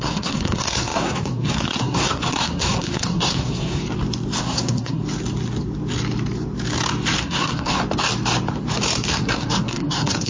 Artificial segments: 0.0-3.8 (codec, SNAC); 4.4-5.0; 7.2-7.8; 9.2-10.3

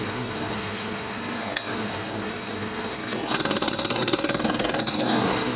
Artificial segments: 0.0-5.6 (codec, SNAC)

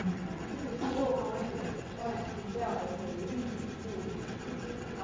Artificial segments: 0.0-2.5 (vocoder, WaveNeXt); 4.1-5.0